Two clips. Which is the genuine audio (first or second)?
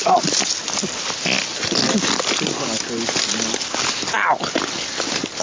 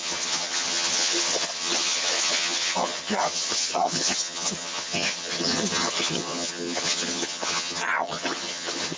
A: first